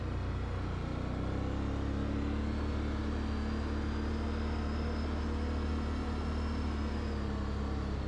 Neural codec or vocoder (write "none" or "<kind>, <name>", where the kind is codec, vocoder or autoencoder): none